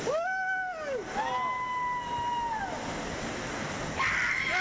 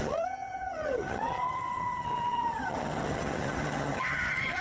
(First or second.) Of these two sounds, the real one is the first